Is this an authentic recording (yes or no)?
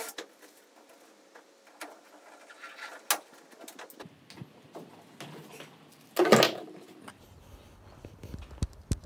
yes